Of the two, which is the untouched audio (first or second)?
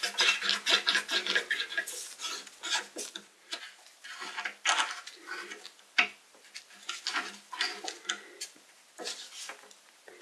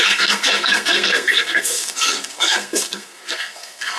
first